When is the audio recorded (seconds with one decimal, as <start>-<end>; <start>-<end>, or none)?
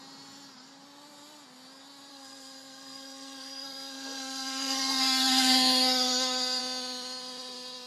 0.0-2.1; 6.6-7.9